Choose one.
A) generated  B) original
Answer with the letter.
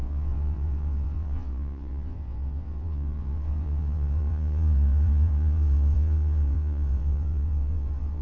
A